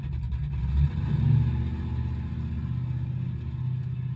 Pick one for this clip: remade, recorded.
recorded